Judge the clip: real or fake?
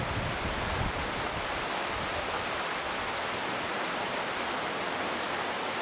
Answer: real